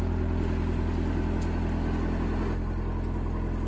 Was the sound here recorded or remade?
recorded